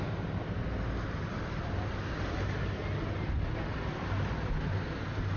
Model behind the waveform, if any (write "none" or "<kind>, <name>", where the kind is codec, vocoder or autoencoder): none